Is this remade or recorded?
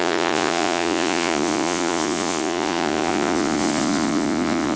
remade